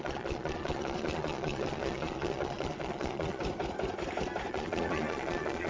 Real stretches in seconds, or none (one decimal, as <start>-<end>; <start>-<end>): 3.4-4.5